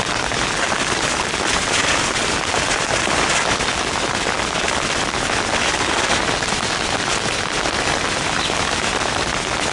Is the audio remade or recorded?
recorded